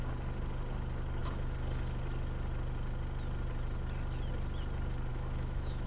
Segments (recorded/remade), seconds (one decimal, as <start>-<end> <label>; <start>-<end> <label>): 0.0-5.1 recorded; 5.1-5.9 remade